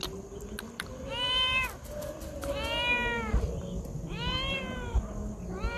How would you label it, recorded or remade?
recorded